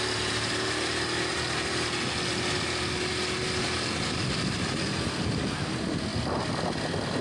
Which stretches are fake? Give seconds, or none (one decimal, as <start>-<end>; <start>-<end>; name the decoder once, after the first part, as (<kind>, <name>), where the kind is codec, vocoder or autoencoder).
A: none